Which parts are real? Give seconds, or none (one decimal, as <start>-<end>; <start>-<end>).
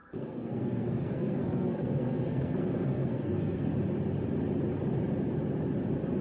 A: 3.7-6.2